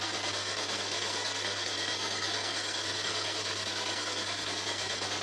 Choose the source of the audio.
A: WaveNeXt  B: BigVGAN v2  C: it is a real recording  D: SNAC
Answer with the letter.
D